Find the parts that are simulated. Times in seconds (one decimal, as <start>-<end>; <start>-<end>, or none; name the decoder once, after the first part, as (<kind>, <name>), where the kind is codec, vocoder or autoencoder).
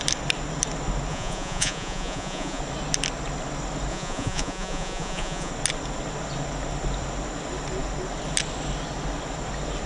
1.1-2.6 (vocoder, Vocos); 3.9-5.5